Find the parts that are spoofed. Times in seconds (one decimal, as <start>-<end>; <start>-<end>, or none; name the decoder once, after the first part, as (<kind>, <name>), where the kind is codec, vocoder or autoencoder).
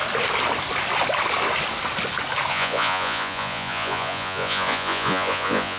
2.5-5.8 (vocoder, Vocos)